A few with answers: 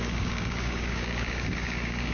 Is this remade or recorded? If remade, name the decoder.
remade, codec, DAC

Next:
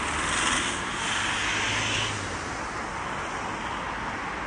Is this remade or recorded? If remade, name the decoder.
recorded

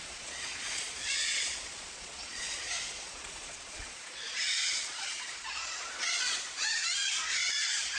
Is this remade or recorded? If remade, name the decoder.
remade, vocoder, Vocos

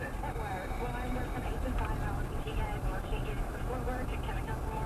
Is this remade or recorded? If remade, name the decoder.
remade, vocoder, BigVGAN v2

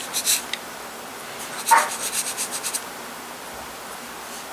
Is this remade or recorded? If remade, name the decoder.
recorded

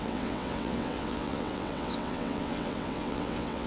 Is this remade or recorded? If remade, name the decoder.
remade, vocoder, WaveNeXt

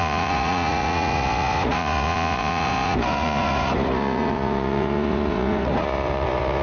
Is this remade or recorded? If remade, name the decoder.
remade, vocoder, Vocos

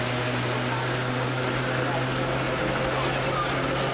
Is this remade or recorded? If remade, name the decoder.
recorded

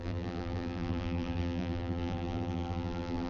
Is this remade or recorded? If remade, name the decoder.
remade, vocoder, BigVGAN v2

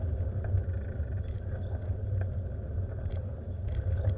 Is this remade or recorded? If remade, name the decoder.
recorded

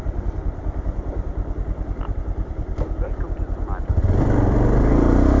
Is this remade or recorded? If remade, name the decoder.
remade, vocoder, BigVGAN v2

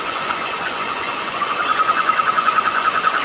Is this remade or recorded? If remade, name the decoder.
remade, vocoder, Vocos